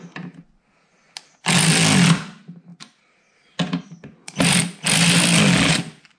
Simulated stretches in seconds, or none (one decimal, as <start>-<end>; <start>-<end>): none